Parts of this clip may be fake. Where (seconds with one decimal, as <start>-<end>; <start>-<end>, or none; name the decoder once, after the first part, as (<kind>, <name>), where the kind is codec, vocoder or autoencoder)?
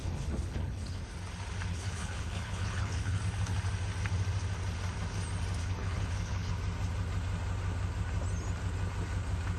0.0-1.0 (codec, HILCodec); 1.7-3.2; 5.6-6.5